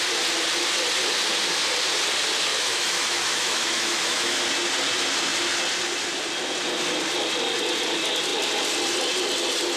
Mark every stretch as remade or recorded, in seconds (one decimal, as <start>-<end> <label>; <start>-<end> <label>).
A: 0.0-2.5 recorded; 2.5-4.4 remade; 4.4-9.8 recorded